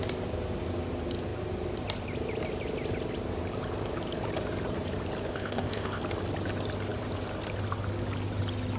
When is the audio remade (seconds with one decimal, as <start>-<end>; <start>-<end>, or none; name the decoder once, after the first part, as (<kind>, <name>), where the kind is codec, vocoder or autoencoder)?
5.3-6.0 (codec, ZipCodec)